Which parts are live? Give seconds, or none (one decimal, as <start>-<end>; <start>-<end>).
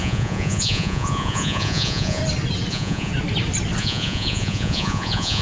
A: 2.2-2.7; 3.1-3.8